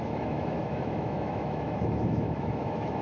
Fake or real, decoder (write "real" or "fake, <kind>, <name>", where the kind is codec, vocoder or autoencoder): fake, autoencoder, DAC-VAE